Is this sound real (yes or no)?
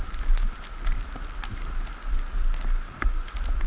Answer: yes